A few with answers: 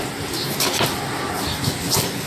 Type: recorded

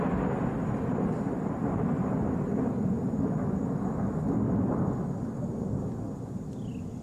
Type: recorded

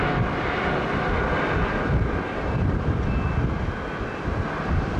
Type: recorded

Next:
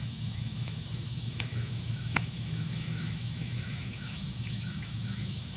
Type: remade